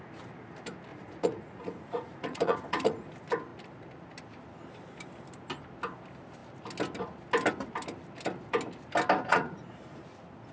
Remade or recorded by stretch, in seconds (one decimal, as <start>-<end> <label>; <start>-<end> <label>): 0.0-0.9 recorded; 0.9-3.1 remade; 3.1-9.3 recorded; 9.3-10.0 remade; 10.0-10.5 recorded